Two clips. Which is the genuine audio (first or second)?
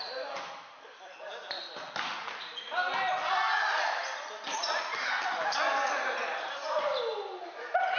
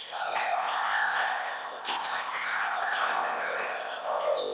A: first